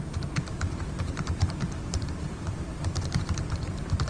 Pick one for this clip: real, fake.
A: fake